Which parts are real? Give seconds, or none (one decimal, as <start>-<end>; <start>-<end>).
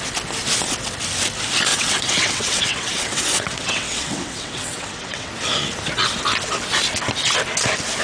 0.0-1.7; 5.3-8.0